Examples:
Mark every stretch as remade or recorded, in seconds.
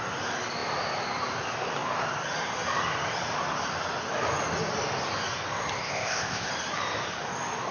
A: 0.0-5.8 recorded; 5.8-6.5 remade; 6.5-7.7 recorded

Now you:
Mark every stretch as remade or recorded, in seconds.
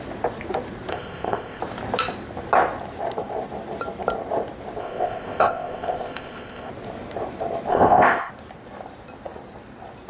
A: 0.0-0.9 recorded; 0.9-1.6 remade; 1.6-4.8 recorded; 4.8-6.7 remade; 6.7-7.7 recorded; 7.7-8.3 remade; 8.3-10.1 recorded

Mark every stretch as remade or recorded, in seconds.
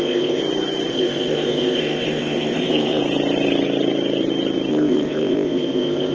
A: 0.0-0.4 remade; 0.4-0.9 recorded; 0.9-3.0 remade; 3.0-4.7 recorded; 4.7-6.1 remade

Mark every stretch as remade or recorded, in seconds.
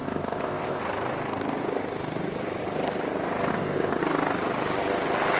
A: 0.0-0.8 remade; 0.8-3.5 recorded; 3.5-4.0 remade; 4.0-5.4 recorded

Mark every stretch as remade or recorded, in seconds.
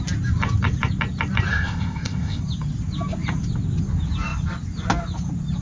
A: 0.0-1.5 recorded; 1.5-2.4 remade; 2.4-5.6 recorded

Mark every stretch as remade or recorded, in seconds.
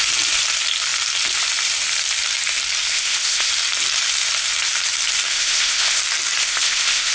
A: 0.0-2.9 recorded; 2.9-3.5 remade; 3.5-5.3 recorded; 5.3-6.0 remade; 6.0-6.4 recorded; 6.4-7.1 remade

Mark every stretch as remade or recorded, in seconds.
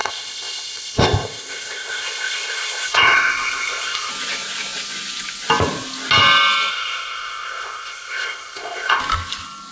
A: 0.0-4.1 remade; 4.1-6.7 recorded; 6.7-9.0 remade; 9.0-9.7 recorded